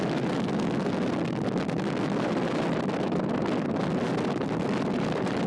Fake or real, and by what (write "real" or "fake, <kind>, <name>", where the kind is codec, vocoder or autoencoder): real